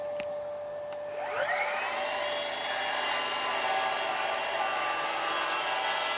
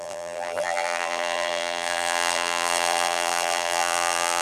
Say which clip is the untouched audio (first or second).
first